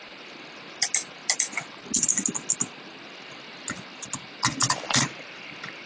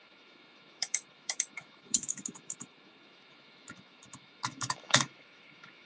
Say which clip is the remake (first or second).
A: second